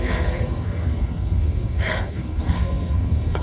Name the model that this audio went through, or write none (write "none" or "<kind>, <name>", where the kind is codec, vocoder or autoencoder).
codec, SNAC